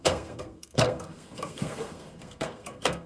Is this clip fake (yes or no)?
yes